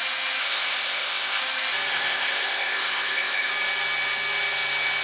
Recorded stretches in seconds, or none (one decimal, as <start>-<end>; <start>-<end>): 0.0-0.4; 1.4-1.9; 3.5-5.0